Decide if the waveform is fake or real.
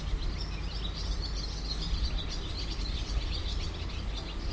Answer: real